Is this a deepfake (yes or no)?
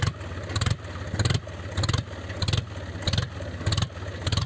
no